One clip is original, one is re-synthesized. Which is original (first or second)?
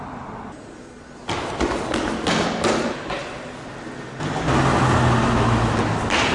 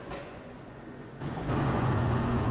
first